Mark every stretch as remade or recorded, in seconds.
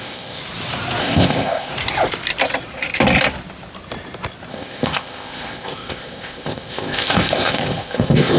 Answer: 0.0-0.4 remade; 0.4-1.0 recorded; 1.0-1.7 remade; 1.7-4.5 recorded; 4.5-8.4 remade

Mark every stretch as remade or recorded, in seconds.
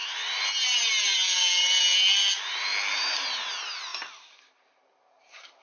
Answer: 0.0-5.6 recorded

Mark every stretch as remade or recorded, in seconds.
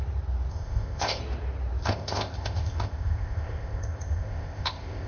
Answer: 0.0-0.5 recorded; 0.5-1.2 remade; 1.2-1.8 recorded; 1.8-5.1 remade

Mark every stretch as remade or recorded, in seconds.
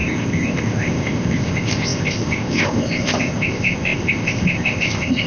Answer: 0.0-5.3 remade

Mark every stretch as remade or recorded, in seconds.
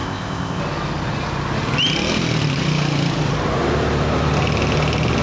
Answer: 0.0-0.6 remade; 0.6-5.2 recorded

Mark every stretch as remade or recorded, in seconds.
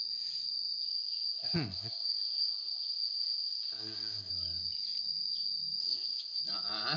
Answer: 0.0-0.9 recorded; 0.9-4.3 remade; 4.3-5.8 recorded; 5.8-6.4 remade; 6.4-7.0 recorded